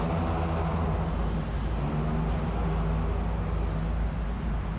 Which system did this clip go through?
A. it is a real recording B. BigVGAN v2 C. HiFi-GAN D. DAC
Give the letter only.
A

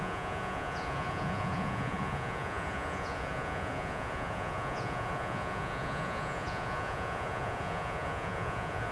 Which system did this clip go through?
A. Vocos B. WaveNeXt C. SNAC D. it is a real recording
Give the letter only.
A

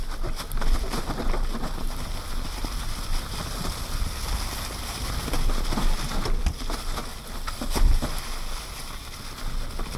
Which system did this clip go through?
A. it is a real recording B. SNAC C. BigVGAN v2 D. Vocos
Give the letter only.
A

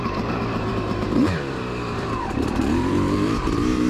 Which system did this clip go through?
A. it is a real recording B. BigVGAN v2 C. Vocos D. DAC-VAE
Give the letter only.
B